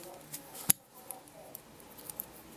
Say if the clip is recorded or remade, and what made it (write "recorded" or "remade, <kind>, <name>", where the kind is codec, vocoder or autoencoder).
recorded